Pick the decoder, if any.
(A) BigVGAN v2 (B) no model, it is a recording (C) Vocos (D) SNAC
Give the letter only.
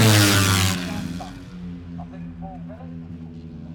B